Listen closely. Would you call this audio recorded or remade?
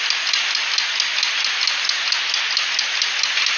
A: recorded